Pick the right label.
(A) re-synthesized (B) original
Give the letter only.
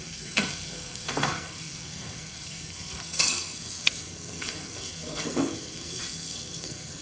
A